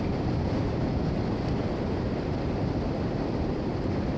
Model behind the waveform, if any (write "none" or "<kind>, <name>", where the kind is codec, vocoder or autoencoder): vocoder, BigVGAN v2